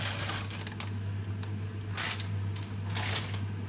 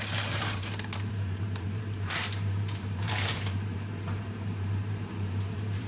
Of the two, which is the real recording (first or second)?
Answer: first